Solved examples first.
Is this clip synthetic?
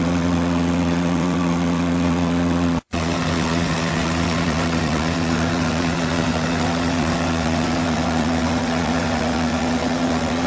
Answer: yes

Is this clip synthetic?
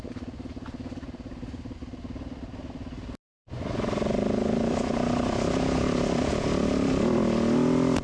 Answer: no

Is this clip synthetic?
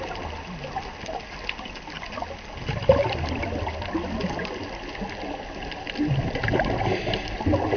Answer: no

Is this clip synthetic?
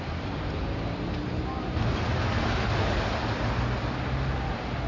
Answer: no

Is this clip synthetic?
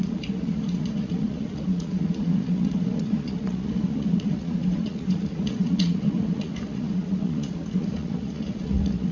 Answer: yes